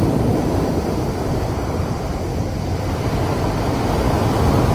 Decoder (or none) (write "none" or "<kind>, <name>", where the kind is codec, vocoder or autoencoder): none